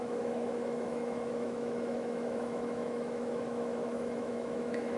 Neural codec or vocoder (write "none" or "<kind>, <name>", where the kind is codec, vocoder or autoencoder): autoencoder, DAC-VAE